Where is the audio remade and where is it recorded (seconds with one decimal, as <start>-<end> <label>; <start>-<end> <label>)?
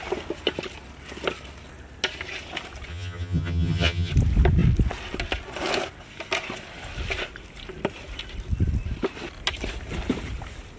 0.0-2.9 recorded; 2.9-4.1 remade; 4.1-10.8 recorded